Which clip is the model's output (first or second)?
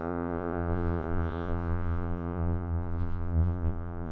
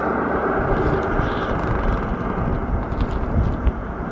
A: first